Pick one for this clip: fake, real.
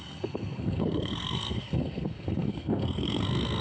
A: fake